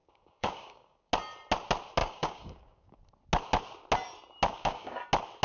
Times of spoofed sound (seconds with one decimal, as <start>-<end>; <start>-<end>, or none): 0.0-1.1; 2.0-3.0; 4.5-5.0